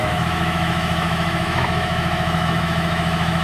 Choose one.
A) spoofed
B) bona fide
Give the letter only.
A